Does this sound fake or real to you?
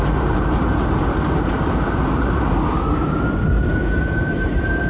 real